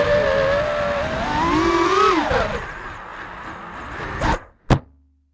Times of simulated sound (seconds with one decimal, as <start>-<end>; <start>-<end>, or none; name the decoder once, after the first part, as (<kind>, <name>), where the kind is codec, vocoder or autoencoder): none